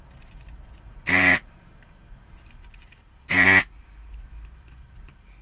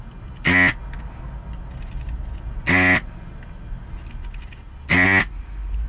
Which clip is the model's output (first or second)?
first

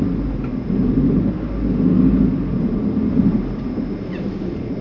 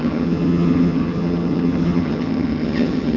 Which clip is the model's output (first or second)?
second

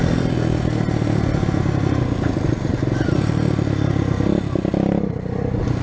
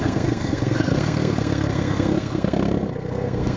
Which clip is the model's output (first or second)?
second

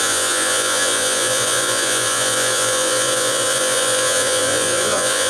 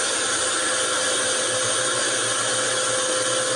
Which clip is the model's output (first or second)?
first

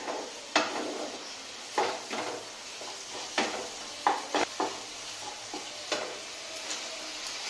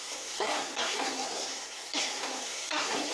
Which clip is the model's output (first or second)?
second